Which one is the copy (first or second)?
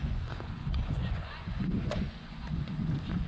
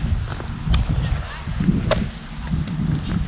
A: first